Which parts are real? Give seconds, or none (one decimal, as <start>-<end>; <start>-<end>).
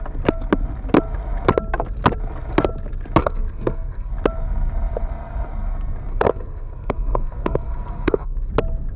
0.0-3.2; 4.1-6.1; 8.5-9.0